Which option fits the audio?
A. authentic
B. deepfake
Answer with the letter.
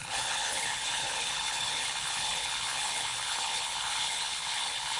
B